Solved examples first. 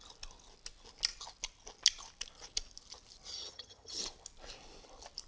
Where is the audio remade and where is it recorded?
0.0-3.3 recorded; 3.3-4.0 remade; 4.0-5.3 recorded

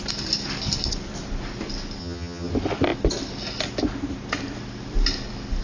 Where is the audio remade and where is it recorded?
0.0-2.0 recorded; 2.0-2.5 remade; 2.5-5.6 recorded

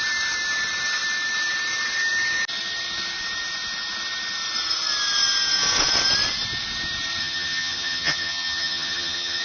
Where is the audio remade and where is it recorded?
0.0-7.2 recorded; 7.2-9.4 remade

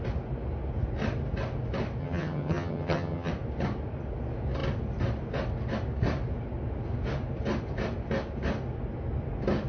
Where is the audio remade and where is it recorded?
0.0-2.0 recorded; 2.0-3.3 remade; 3.3-9.7 recorded

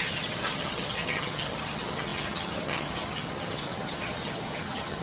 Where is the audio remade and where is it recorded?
0.0-5.0 remade